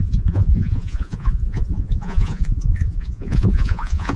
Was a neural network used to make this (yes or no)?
yes